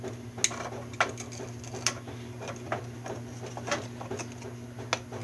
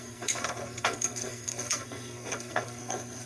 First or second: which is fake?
second